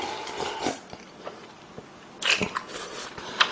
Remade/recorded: recorded